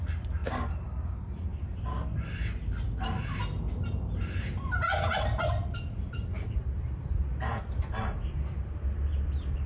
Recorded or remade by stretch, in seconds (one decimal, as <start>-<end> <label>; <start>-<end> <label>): 0.0-7.5 recorded; 7.5-8.6 remade; 8.6-9.7 recorded